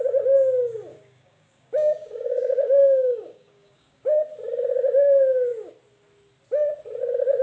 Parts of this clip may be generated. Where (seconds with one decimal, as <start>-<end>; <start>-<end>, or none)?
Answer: 0.9-4.2